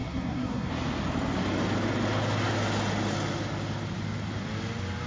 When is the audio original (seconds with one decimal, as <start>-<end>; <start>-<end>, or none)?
0.7-5.1